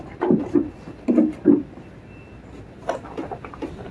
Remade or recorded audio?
recorded